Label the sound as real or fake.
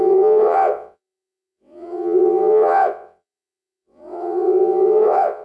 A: fake